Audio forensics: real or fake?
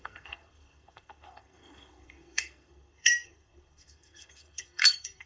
fake